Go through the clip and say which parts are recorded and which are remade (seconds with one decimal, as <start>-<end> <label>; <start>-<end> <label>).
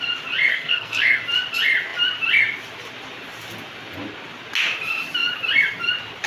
0.0-0.5 recorded; 0.5-1.2 remade; 1.2-6.3 recorded